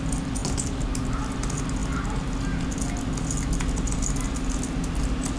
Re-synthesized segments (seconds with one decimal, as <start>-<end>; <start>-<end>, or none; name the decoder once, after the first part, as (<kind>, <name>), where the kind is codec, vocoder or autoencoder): none